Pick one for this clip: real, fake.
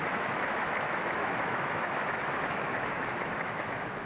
fake